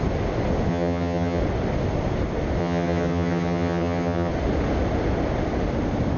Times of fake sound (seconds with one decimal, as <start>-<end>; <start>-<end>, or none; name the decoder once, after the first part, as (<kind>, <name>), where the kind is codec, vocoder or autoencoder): 0.7-1.4 (vocoder, HiFi-GAN); 2.6-4.3